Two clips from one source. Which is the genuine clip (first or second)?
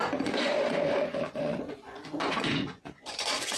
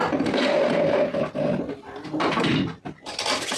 second